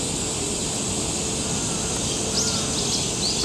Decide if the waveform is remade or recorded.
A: recorded